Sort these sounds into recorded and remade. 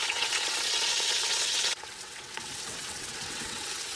remade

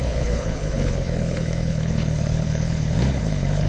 remade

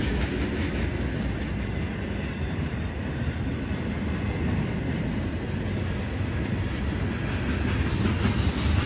recorded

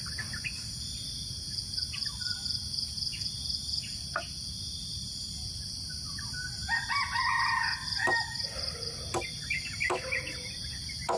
recorded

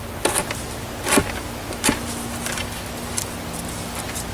recorded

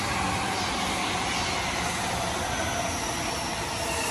recorded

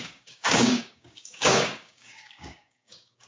remade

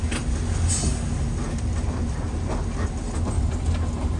recorded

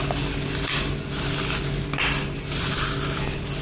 recorded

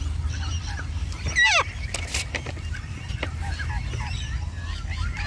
recorded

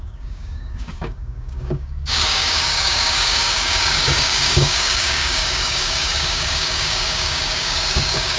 remade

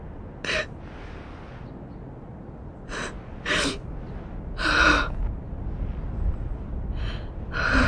recorded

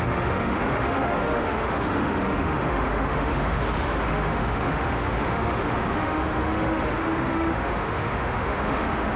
remade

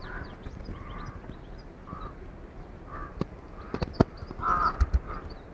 recorded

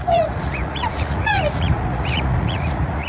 remade